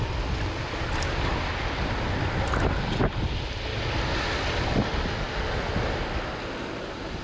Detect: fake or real real